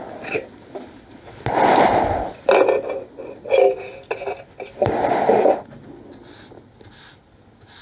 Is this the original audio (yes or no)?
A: yes